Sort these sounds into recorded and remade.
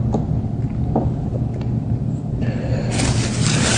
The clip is recorded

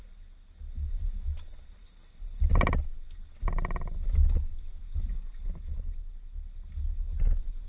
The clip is recorded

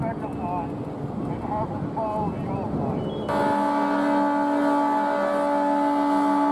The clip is recorded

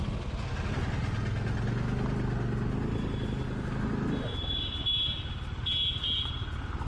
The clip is recorded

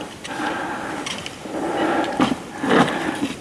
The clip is remade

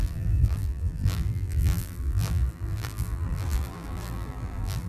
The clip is remade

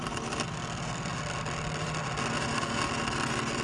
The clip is recorded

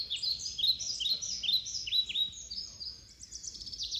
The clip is remade